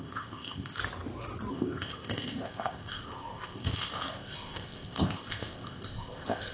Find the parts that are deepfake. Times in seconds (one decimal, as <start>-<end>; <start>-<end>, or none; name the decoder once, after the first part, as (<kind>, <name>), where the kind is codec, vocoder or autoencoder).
0.0-0.8 (codec, ZipCodec); 1.5-6.5